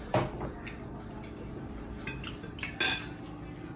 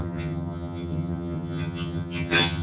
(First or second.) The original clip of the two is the first